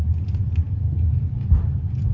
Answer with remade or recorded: recorded